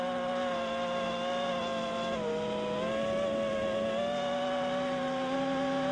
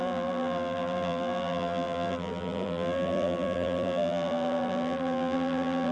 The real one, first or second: first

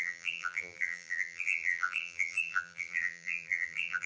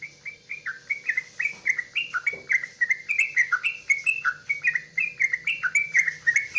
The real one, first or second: second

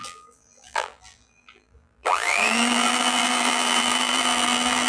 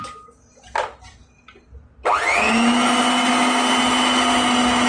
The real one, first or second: second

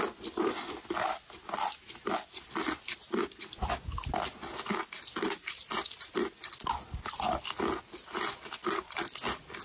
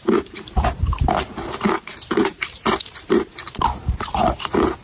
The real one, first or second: first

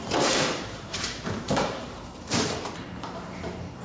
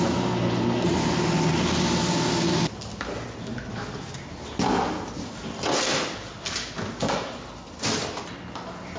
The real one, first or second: second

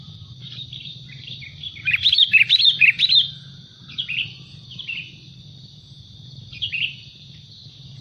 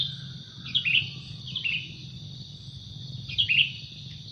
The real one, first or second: second